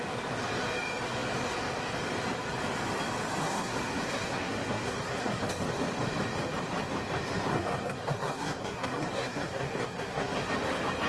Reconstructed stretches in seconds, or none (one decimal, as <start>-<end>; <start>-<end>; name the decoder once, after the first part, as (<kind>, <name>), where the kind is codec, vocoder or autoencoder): 3.4-5.4 (codec, SNAC); 7.5-10.5